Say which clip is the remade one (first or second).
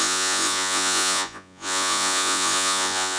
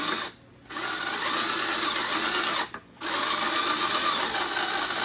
first